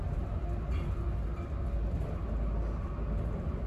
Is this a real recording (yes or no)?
yes